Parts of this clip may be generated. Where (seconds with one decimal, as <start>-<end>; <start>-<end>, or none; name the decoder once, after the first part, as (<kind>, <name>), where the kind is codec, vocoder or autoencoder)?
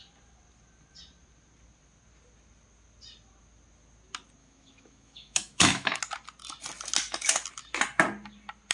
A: 4.4-6.0 (autoencoder, DAC-VAE)